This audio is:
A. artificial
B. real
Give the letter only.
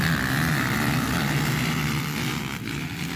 B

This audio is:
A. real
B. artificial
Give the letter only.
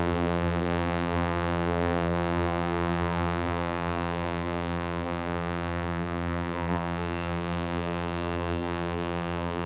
B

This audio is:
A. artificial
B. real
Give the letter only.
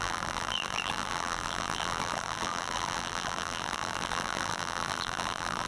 A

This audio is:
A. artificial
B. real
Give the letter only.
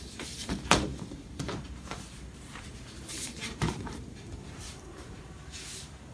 A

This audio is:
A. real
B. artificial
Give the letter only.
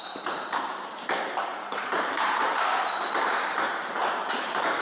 B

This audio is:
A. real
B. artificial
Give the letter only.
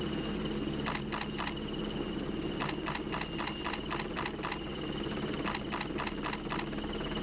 A